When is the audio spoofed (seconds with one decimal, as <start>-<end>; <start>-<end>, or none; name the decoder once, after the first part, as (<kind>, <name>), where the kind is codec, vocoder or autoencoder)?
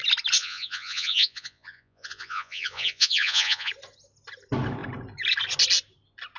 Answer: 0.4-3.7 (vocoder, Vocos)